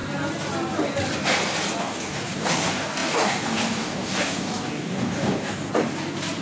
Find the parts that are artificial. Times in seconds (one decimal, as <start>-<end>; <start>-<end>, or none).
1.8-5.7